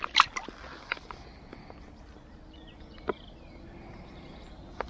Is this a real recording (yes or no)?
yes